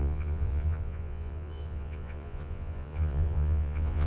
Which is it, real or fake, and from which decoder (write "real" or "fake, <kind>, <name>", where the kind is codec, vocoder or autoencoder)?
fake, vocoder, Vocos